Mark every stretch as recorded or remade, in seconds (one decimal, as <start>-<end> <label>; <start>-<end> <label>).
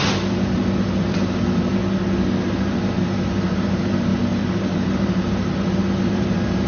0.0-1.8 remade; 1.8-2.4 recorded; 2.4-6.7 remade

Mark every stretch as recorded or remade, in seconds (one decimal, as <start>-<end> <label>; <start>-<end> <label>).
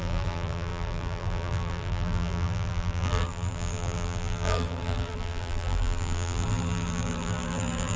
0.0-8.0 remade